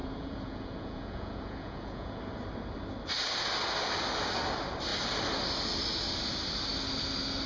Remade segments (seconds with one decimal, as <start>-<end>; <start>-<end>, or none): 0.0-2.2